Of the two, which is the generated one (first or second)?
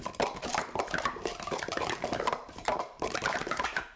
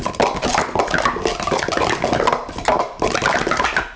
first